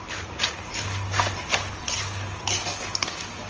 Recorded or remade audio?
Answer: recorded